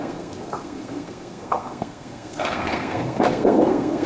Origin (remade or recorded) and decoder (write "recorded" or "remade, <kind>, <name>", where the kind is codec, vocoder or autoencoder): remade, codec, SNAC